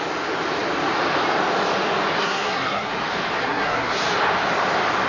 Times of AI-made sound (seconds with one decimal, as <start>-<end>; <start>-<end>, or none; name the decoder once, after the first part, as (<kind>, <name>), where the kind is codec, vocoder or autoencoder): 2.2-2.9 (codec, SNAC); 3.4-4.0